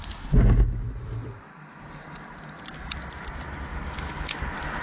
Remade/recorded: recorded